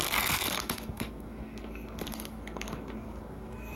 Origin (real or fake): fake